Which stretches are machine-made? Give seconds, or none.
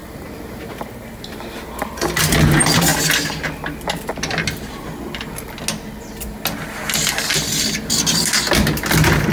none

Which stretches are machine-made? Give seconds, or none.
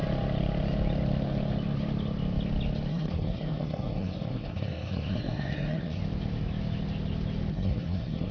2.9-6.0 (codec, SNAC); 7.5-8.3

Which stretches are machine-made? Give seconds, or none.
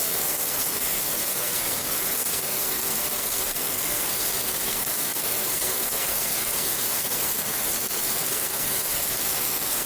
0.0-9.9 (codec, SNAC)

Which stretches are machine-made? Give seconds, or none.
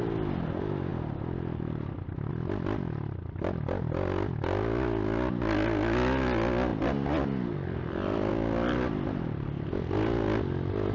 none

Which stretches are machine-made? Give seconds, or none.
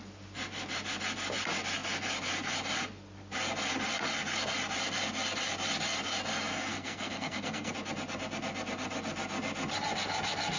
6.7-7.7 (codec, SNAC)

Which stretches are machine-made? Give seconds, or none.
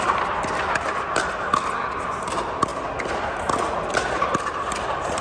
none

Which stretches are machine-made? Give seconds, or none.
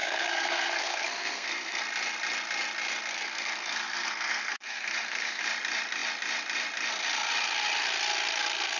0.0-1.8 (codec, SNAC); 3.1-5.4